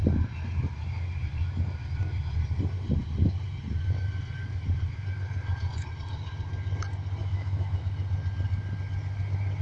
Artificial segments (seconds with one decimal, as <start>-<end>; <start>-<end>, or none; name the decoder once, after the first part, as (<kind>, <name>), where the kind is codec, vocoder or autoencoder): 7.2-7.8 (autoencoder, DAC-VAE)